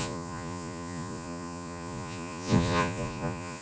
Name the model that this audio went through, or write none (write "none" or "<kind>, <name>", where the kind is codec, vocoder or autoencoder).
vocoder, Vocos